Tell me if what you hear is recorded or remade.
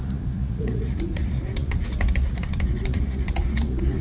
remade